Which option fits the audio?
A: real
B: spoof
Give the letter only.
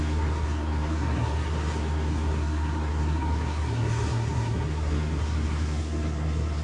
B